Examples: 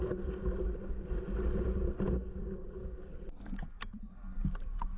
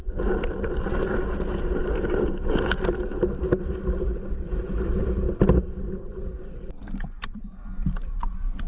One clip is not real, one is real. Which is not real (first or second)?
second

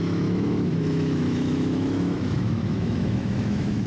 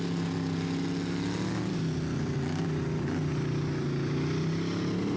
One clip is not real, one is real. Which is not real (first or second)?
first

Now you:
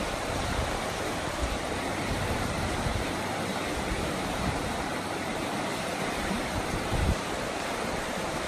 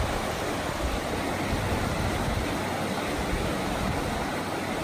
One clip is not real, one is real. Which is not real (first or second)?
first